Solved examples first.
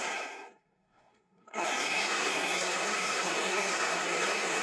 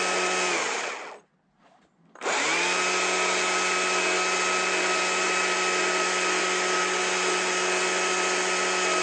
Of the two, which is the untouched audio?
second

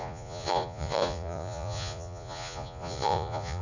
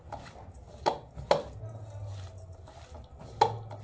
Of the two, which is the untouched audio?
second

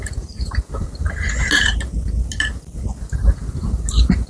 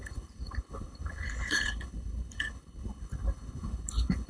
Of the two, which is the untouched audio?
first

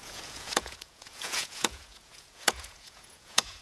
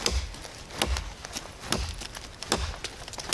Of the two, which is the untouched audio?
second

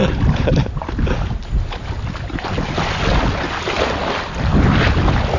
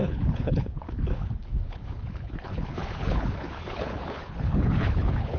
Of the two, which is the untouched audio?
first